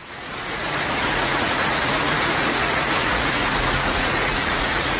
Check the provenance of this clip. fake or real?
fake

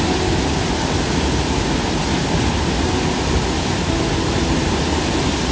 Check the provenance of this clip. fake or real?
real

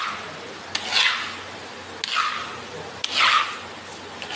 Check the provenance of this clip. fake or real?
real